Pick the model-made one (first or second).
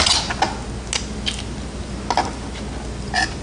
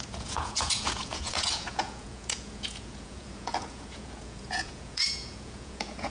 second